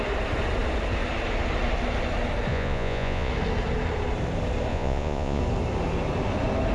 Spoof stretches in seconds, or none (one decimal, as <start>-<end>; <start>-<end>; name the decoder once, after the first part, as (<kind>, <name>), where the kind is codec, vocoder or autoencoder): 2.5-3.3 (vocoder, Vocos); 4.7-5.4